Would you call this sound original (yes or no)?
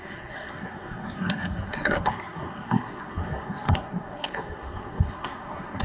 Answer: no